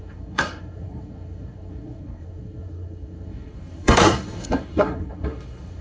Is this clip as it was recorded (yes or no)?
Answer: no